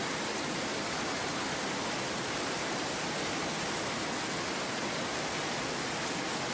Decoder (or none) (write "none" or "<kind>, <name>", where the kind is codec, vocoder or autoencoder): none